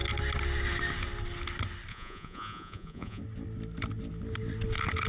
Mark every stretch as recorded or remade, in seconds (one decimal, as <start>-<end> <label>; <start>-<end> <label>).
0.0-1.9 recorded; 1.9-3.2 remade; 3.2-5.1 recorded